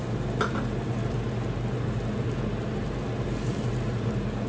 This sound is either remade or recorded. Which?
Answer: recorded